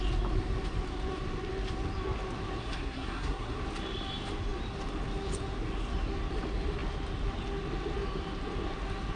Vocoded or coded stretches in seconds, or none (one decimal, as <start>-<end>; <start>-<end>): 2.6-3.6